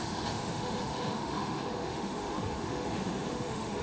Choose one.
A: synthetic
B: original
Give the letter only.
A